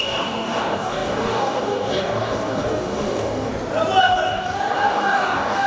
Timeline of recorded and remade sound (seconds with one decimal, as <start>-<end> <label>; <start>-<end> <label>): 0.0-3.5 remade; 3.5-4.0 recorded; 4.0-5.7 remade